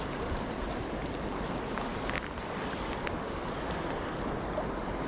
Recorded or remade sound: recorded